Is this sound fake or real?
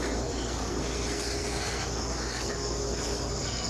fake